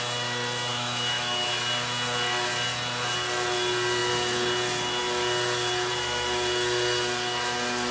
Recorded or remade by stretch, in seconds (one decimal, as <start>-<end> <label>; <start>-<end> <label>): 0.0-0.7 recorded; 0.7-1.5 remade; 1.5-7.9 recorded